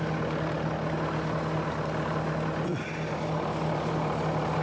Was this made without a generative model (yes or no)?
yes